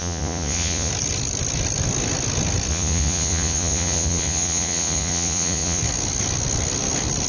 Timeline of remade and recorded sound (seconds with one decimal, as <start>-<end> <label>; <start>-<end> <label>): 0.0-0.9 remade; 0.9-2.7 recorded; 2.7-5.8 remade; 5.8-7.3 recorded